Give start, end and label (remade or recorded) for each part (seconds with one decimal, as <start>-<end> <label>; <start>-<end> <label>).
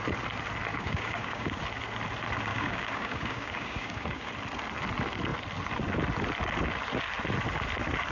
0.0-0.7 recorded; 0.7-1.6 remade; 1.6-2.5 recorded; 2.5-4.3 remade; 4.3-8.1 recorded